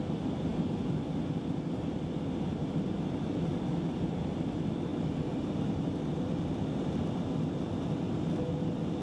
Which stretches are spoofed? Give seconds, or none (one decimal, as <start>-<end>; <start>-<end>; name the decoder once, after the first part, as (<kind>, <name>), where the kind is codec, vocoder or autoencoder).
none